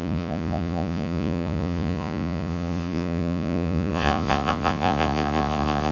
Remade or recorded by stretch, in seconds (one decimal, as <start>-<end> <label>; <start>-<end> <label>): 0.0-5.9 remade